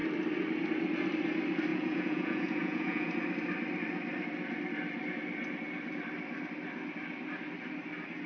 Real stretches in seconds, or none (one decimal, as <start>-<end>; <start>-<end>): 0.0-1.7; 3.1-8.3